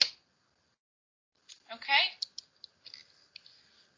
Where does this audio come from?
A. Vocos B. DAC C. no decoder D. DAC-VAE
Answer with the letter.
C